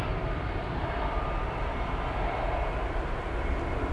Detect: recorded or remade recorded